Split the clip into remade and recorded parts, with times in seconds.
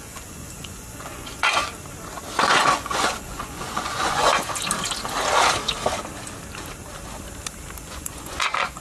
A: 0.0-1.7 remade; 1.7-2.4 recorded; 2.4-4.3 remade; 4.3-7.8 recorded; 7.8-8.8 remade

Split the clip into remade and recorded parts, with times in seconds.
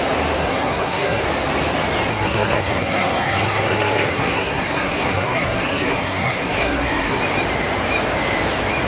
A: 0.0-0.4 recorded; 0.4-1.2 remade; 1.2-2.1 recorded; 2.1-7.2 remade; 7.2-8.9 recorded